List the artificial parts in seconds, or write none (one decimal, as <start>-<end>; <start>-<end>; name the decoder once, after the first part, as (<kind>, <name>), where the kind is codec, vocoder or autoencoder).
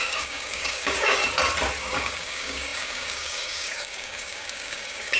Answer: 0.0-1.2 (codec, DAC); 1.8-5.2